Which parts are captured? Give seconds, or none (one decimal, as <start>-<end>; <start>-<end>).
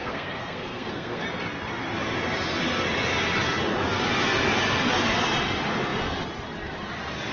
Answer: 1.2-7.3